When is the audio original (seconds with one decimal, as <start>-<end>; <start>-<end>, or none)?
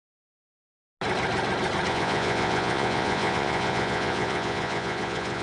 0.0-1.9